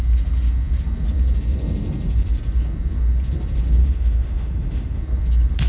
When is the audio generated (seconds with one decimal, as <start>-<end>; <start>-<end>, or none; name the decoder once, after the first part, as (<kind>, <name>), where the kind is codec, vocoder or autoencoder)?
3.8-5.0 (autoencoder, DAC-VAE)